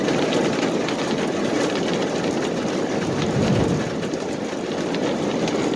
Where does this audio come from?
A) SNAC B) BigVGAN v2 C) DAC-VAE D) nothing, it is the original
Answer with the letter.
D